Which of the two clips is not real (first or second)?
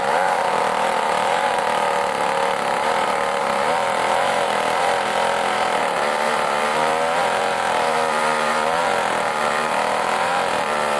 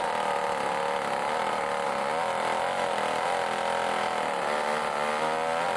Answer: first